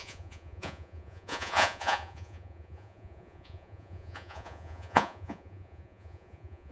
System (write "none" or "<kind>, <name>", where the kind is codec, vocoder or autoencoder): vocoder, Vocos